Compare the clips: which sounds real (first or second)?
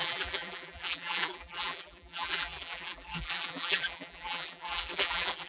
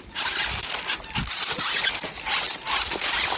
second